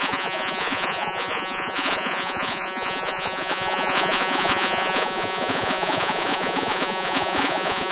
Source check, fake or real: fake